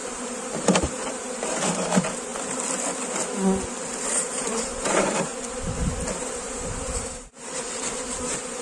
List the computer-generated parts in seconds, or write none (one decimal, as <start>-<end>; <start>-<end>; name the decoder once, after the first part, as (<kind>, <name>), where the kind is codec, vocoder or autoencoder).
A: 0.0-2.3 (vocoder, BigVGAN v2); 4.2-5.3; 6.2-8.6

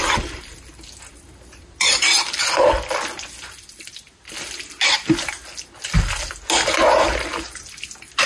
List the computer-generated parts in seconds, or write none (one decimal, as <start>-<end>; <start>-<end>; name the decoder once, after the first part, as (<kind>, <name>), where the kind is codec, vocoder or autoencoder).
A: none

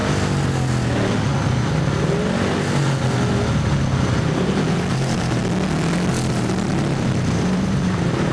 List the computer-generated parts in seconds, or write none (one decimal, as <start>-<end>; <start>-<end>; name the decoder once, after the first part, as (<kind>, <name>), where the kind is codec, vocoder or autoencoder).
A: 4.9-5.4 (vocoder, BigVGAN v2); 6.1-8.3